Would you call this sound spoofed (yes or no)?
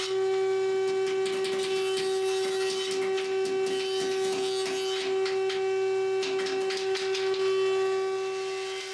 no